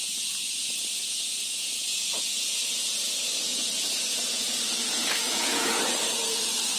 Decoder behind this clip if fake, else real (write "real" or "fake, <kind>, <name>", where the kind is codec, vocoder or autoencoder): fake, vocoder, Vocos